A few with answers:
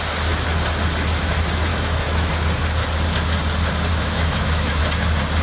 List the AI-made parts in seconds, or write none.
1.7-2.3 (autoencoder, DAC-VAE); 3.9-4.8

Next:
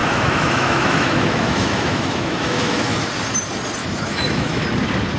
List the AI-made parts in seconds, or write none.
0.0-3.1 (autoencoder, DAC-VAE); 3.8-4.6

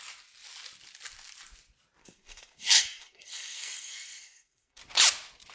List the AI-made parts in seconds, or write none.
2.0-4.8 (codec, SNAC)

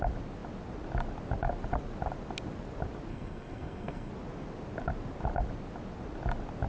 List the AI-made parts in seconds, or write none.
3.1-4.1 (codec, SNAC)

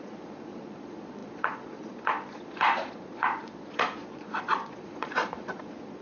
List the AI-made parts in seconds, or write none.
0.0-6.0 (vocoder, Vocos)

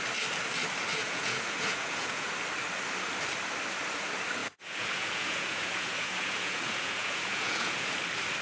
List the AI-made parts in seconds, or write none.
0.9-2.3 (vocoder, Vocos); 4.4-7.9